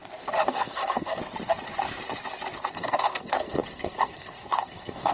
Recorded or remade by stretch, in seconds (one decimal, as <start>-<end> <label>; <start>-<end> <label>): 0.0-0.5 recorded; 0.5-1.2 remade; 1.2-2.7 recorded; 2.7-5.1 remade